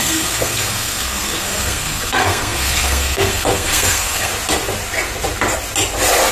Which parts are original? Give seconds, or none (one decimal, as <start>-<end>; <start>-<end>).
4.3-6.3